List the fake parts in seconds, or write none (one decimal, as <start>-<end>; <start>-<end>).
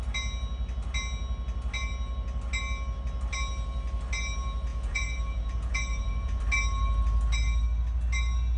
4.7-6.4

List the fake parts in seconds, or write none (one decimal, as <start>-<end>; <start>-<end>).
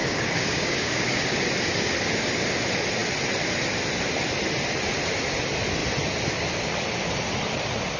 0.0-1.5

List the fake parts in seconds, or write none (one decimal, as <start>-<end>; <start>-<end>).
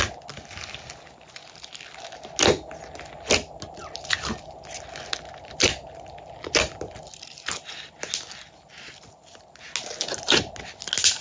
none